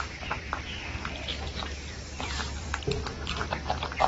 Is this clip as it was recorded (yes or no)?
no